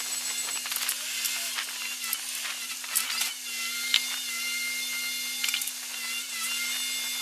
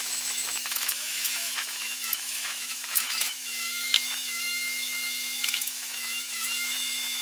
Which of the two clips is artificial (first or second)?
second